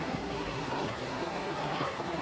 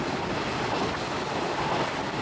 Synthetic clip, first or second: first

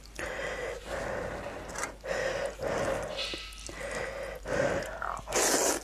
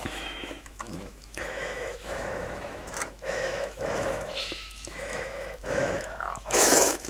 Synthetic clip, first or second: second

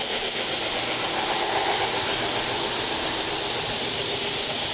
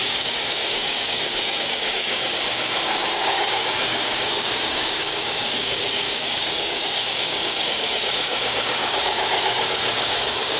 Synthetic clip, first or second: second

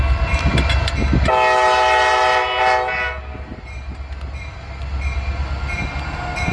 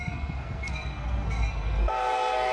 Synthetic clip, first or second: second